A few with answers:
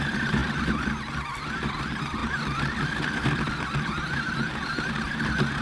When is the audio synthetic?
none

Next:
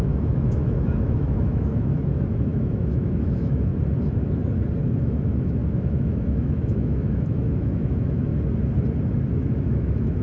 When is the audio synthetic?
0.0-3.7; 5.0-8.3; 9.3-10.2

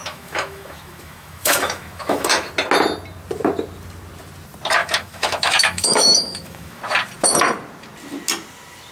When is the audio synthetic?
0.0-2.5; 4.8-6.8